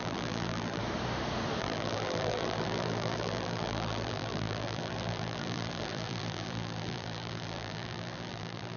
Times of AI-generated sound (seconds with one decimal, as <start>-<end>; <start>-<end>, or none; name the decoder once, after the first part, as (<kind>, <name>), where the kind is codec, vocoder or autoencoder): 0.0-0.8 (vocoder, BigVGAN v2); 1.6-8.8